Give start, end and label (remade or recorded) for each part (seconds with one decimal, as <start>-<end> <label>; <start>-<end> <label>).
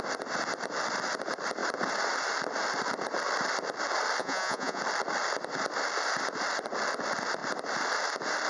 0.0-4.2 recorded; 4.2-4.8 remade; 4.8-8.5 recorded